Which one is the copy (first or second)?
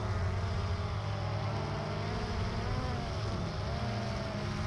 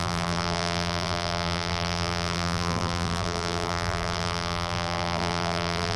second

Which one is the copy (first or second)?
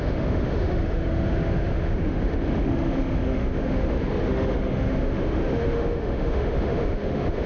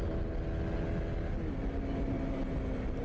first